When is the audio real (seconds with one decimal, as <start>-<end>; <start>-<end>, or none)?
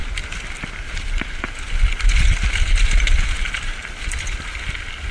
0.0-2.7; 3.8-5.1